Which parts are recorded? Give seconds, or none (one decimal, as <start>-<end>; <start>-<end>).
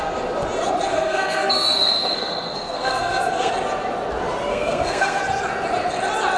0.0-0.9; 3.5-4.5; 5.2-6.4